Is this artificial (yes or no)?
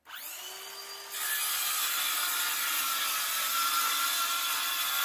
no